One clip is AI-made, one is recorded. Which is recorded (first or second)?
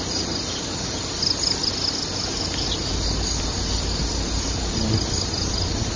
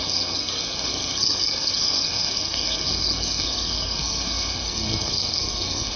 first